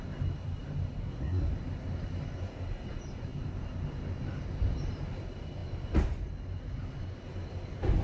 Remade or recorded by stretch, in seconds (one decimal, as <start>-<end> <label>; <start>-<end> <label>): 0.0-1.0 recorded; 1.0-1.5 remade; 1.5-8.0 recorded